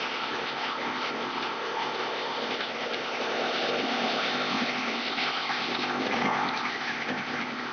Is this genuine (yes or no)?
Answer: no